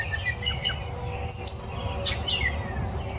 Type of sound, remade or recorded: recorded